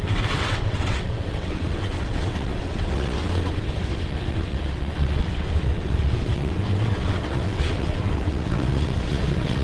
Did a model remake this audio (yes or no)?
yes